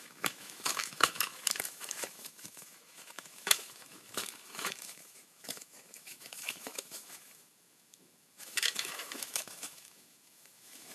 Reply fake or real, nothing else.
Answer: fake